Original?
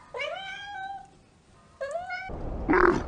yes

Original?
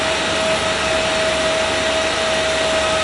yes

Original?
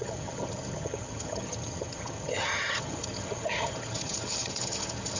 no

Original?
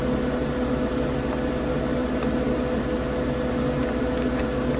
yes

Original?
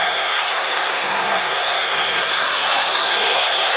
no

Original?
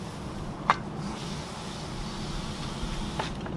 yes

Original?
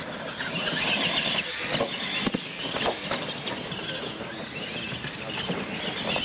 yes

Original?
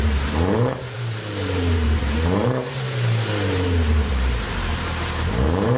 no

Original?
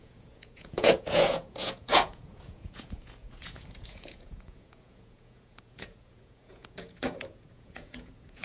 no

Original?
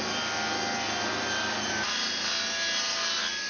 yes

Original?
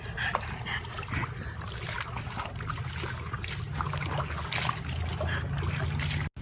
yes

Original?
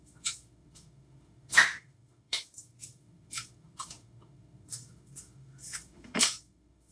no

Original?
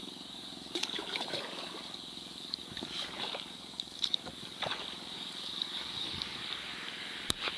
no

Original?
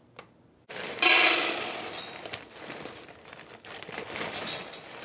no